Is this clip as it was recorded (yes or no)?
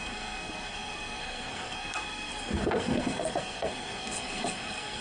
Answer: no